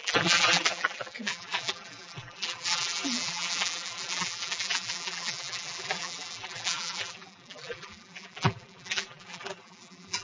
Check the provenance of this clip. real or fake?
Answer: fake